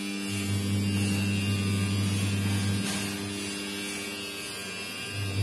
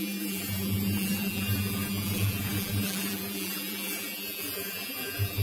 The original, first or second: first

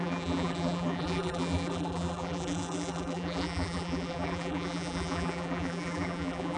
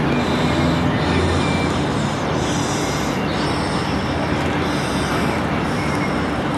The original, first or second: second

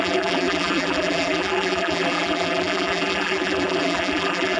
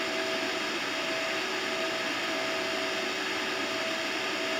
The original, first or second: second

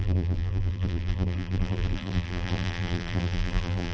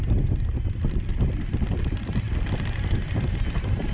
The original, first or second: second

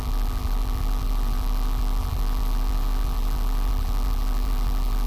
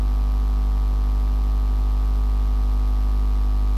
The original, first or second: second